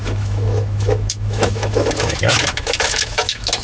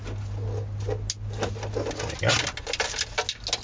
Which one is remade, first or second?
first